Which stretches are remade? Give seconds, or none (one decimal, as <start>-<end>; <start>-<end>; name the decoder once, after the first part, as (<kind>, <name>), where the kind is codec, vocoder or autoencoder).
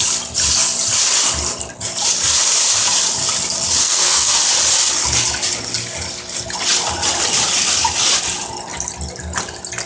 3.8-4.4 (codec, SNAC)